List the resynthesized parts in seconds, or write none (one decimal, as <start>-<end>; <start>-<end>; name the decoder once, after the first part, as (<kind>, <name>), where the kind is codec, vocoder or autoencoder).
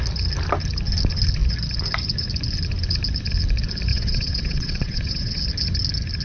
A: 3.9-5.4 (vocoder, WaveNeXt)